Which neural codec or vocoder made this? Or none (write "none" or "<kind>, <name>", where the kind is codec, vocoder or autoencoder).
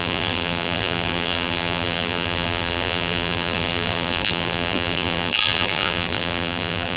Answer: vocoder, BigVGAN v2